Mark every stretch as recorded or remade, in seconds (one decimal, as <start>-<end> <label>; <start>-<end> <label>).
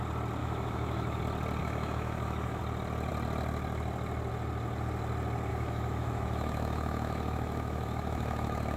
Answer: 0.0-0.4 recorded; 0.4-1.2 remade; 1.2-1.6 recorded; 1.6-2.6 remade; 2.6-5.5 recorded; 5.5-8.8 remade